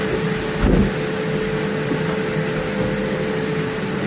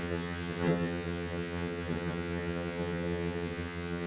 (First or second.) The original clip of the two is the first